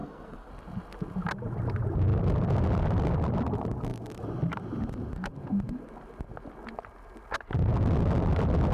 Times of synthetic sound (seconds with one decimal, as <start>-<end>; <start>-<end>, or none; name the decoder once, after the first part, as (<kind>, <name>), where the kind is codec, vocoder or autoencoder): 0.0-0.5 (codec, SNAC)